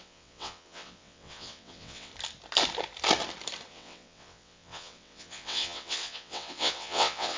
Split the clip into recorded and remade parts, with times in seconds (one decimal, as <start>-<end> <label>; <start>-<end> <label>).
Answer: 0.0-2.1 remade; 2.1-3.7 recorded; 3.7-7.4 remade